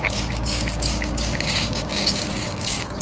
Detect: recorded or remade remade